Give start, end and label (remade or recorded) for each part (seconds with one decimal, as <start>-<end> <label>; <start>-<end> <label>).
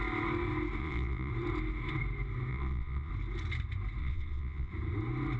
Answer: 0.0-0.8 recorded; 0.8-1.3 remade; 1.3-2.5 recorded; 2.5-3.1 remade; 3.1-4.0 recorded; 4.0-4.7 remade; 4.7-5.4 recorded